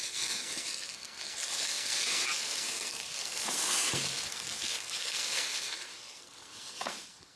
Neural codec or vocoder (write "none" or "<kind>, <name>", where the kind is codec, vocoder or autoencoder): codec, SNAC